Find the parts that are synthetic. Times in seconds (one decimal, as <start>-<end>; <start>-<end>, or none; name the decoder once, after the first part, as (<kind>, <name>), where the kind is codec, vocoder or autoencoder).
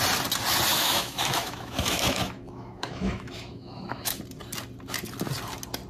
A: 0.7-4.2 (autoencoder, DAC-VAE)